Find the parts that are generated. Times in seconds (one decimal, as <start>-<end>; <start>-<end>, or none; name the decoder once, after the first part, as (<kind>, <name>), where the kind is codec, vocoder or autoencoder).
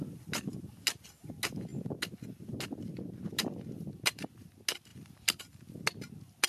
none